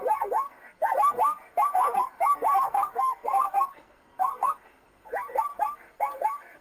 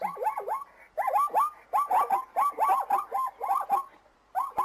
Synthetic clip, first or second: first